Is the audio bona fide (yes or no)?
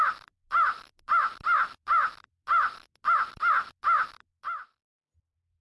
yes